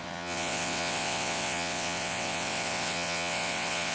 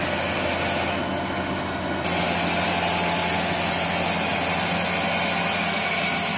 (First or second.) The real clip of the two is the second